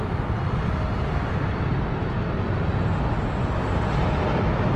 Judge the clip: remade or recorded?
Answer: recorded